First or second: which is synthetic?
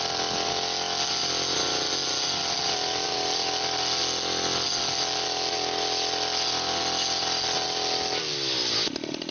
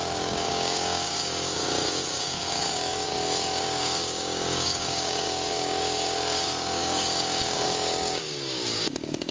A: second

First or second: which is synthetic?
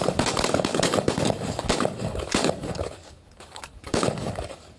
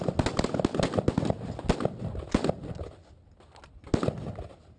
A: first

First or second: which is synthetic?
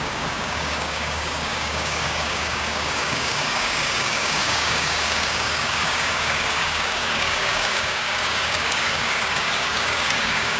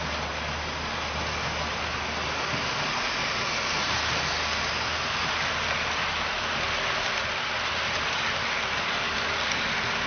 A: first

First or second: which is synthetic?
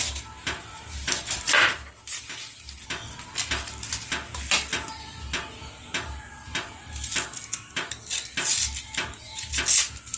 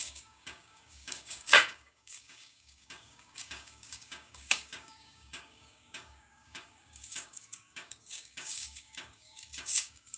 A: second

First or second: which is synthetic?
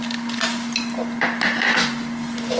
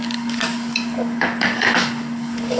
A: second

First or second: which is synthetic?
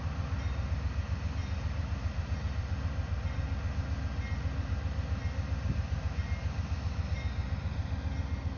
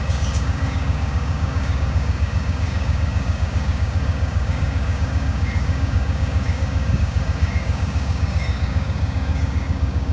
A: second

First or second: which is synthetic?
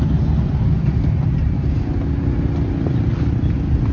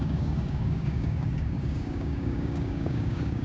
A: second